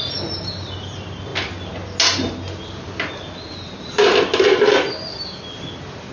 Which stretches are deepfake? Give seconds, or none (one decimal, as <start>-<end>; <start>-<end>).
none